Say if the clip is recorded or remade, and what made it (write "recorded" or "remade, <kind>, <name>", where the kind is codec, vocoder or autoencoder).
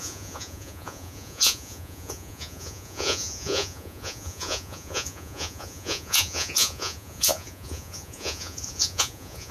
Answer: remade, vocoder, Vocos